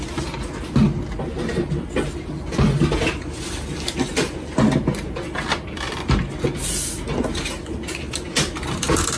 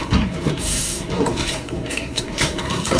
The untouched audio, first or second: first